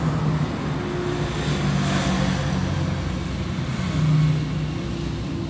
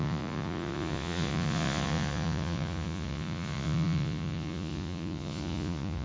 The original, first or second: first